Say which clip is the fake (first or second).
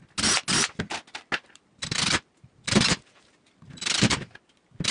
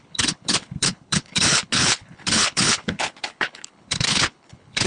second